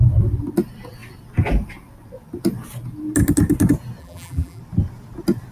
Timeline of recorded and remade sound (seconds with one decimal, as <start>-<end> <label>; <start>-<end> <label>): 0.0-4.0 recorded; 4.0-4.6 remade; 4.6-5.5 recorded